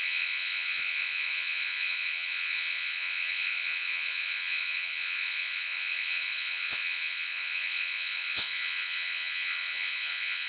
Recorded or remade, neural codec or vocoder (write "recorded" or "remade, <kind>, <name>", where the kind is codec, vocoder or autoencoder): remade, vocoder, Vocos